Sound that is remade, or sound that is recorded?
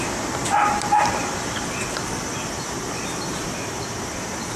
recorded